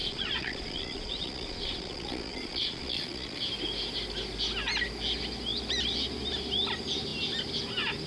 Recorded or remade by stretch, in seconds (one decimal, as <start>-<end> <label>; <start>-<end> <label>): 0.0-3.4 remade; 3.4-8.1 recorded